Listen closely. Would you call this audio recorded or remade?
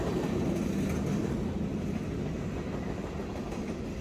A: recorded